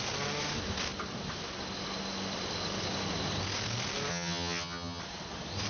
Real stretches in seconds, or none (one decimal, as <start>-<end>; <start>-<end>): 0.0-4.1; 5.0-5.7